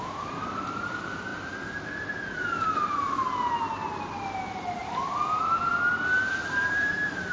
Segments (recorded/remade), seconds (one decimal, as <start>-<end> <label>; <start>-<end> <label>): 0.0-1.3 remade; 1.3-4.8 recorded; 4.8-5.7 remade; 5.7-6.3 recorded; 6.3-7.3 remade